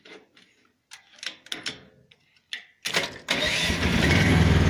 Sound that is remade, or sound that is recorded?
recorded